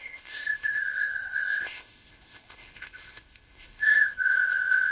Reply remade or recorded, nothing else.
remade